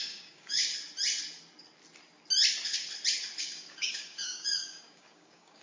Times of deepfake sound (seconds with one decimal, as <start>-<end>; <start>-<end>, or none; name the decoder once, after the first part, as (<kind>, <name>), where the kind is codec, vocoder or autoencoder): 0.0-0.6 (codec, DAC); 3.4-5.6